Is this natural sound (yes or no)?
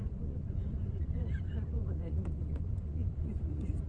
no